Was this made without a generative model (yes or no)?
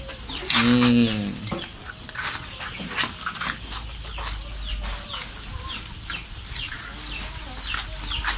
yes